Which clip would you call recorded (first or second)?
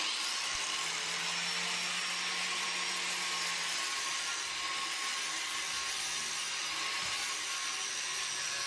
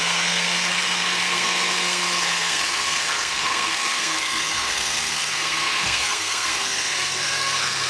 first